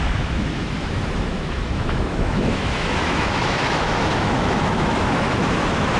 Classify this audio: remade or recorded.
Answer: remade